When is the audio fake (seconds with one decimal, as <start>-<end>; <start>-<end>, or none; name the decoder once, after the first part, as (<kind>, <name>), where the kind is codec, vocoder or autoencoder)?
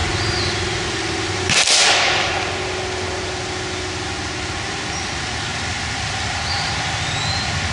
none